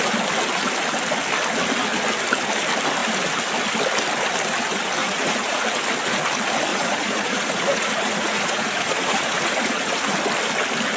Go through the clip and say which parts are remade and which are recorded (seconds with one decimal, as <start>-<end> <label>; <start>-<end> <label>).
0.0-5.0 recorded; 5.0-5.6 remade; 5.6-6.7 recorded; 6.7-10.0 remade; 10.0-11.0 recorded

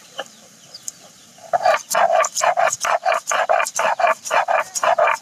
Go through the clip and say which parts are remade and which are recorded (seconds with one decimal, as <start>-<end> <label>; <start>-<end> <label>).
0.0-1.2 recorded; 1.2-1.7 remade; 1.7-5.2 recorded

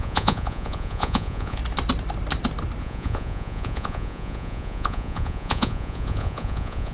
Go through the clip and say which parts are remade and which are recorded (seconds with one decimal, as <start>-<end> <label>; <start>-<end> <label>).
0.0-1.6 remade; 1.6-2.8 recorded; 2.8-6.9 remade

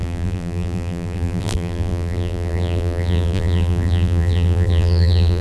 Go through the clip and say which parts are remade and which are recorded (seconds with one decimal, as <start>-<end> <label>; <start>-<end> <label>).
0.0-5.4 remade